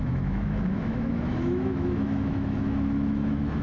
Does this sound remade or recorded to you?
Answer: remade